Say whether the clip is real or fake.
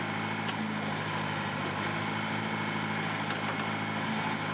real